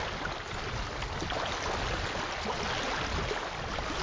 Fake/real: real